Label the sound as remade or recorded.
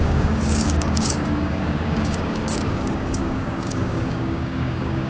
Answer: remade